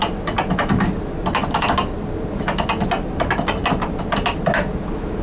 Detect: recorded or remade recorded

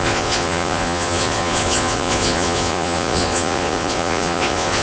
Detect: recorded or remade remade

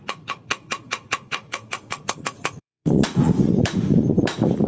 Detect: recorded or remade remade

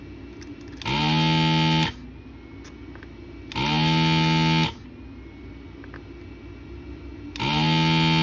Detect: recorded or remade recorded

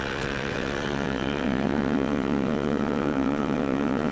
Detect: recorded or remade remade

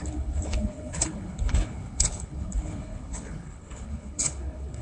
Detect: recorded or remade remade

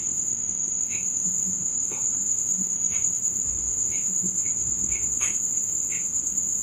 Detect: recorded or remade remade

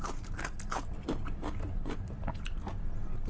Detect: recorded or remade remade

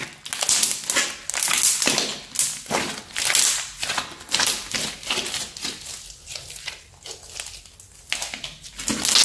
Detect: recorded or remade recorded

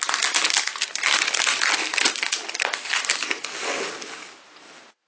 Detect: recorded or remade recorded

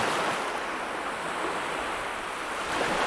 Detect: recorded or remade recorded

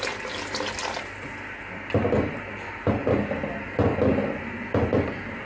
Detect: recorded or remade recorded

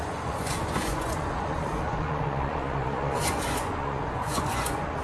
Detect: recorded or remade remade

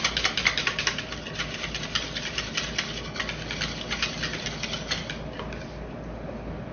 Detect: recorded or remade recorded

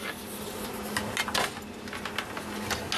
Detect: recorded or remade recorded